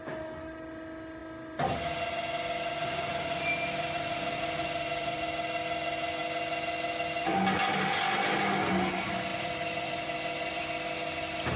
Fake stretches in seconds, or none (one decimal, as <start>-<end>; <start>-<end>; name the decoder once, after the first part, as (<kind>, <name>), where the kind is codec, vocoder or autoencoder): 1.2-1.8 (vocoder, BigVGAN v2); 3.1-5.2; 9.3-10.6